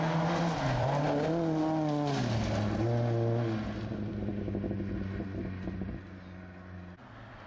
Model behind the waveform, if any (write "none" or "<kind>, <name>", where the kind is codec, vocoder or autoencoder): none